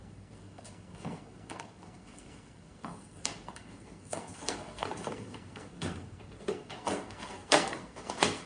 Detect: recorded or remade remade